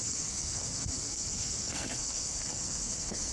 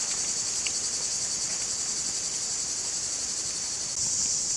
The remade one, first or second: first